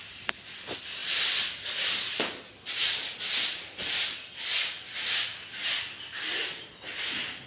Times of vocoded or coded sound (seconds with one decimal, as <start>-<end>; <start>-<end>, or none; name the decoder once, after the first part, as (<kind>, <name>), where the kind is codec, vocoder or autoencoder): none